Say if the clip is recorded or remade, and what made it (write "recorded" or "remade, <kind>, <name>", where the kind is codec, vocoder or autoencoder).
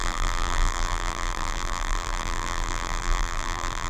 remade, vocoder, BigVGAN v2